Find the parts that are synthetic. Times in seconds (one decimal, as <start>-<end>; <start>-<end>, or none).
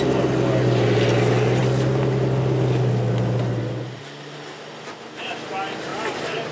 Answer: none